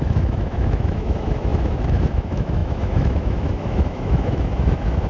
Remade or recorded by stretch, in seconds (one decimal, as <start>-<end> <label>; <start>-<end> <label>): 0.0-5.1 remade